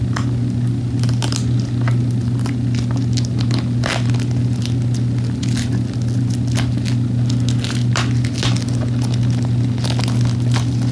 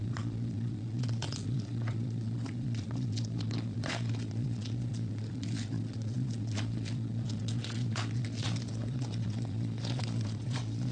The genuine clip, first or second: first